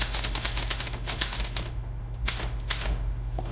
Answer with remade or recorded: remade